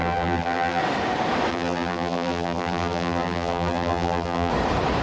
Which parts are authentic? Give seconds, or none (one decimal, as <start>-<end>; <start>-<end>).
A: 0.8-1.5; 4.5-5.0